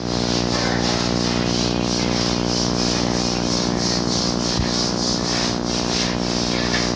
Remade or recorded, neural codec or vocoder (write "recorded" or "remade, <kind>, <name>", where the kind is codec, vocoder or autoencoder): recorded